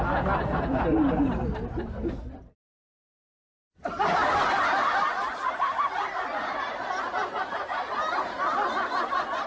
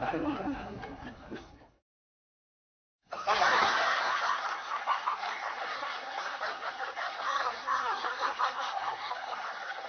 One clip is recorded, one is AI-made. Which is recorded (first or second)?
first